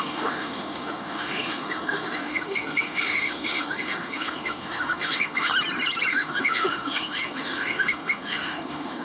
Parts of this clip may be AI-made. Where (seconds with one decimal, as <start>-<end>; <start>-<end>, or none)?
0.0-5.5; 6.1-9.0